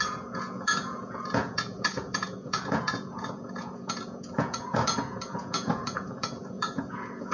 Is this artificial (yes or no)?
yes